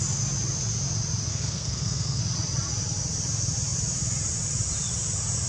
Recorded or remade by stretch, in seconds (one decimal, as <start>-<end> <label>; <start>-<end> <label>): 0.0-1.3 recorded; 1.3-2.2 remade; 2.2-5.5 recorded